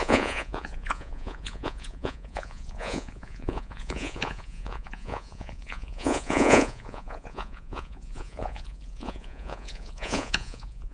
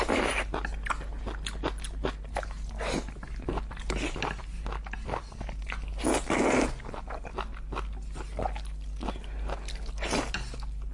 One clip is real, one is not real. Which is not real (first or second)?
first